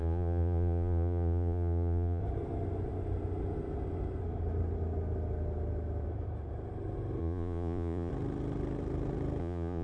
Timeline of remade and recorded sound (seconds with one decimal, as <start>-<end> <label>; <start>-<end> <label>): 0.0-2.2 remade; 2.2-7.2 recorded; 7.2-8.1 remade; 8.1-9.4 recorded; 9.4-9.8 remade